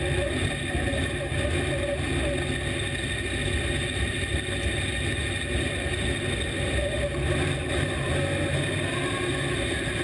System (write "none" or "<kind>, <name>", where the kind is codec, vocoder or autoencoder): none